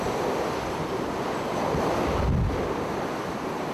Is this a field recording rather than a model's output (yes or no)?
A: yes